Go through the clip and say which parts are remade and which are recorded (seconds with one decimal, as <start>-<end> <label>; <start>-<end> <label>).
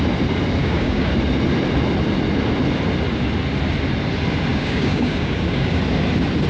0.0-0.6 recorded; 0.6-1.1 remade; 1.1-4.5 recorded; 4.5-5.8 remade; 5.8-6.5 recorded